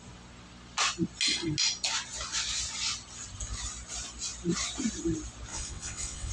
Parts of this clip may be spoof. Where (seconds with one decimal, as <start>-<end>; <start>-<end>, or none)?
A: 5.5-6.3